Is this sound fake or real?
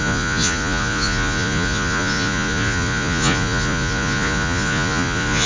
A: fake